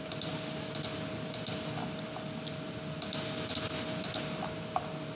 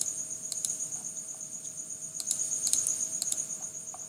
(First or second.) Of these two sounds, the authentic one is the first